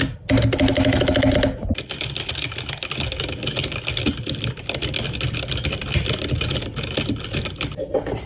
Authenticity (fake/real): real